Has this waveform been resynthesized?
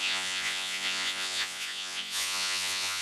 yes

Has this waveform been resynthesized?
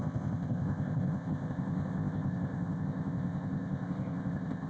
yes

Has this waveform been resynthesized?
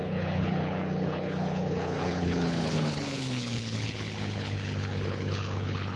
yes